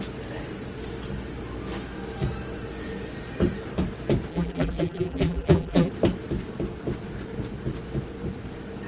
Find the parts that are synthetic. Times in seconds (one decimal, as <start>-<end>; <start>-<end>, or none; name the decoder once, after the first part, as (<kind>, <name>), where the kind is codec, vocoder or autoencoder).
4.3-5.9 (vocoder, BigVGAN v2)